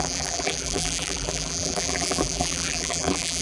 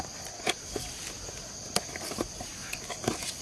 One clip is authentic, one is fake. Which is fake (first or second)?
first